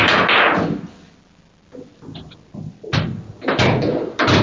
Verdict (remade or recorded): recorded